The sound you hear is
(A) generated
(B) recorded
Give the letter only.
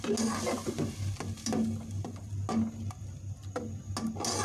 B